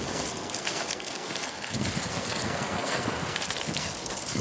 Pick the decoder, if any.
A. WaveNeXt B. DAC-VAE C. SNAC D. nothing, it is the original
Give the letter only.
C